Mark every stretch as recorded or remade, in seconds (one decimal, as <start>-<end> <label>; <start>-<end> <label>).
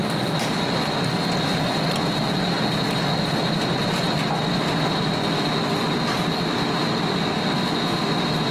0.0-8.5 recorded